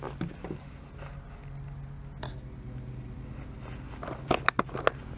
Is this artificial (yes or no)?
no